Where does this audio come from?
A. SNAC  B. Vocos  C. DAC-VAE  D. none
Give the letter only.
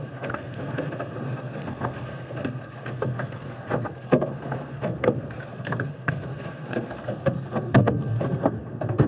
A